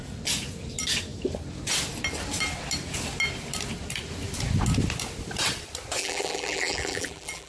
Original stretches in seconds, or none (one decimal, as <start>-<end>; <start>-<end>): 0.0-6.0